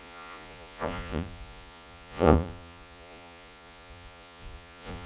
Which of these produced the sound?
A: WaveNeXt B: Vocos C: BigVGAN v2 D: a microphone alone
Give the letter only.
B